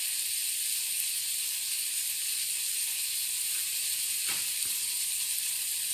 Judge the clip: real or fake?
real